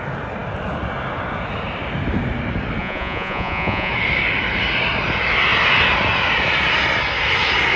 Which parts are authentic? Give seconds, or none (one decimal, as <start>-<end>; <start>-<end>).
0.0-2.8; 3.9-7.8